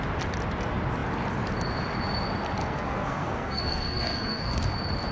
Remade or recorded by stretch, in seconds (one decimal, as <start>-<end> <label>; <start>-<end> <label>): 0.0-2.6 recorded; 2.6-4.6 remade; 4.6-5.1 recorded